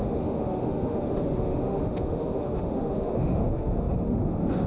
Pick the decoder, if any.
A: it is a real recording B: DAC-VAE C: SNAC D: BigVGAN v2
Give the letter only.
B